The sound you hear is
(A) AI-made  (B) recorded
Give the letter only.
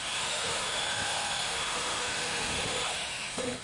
A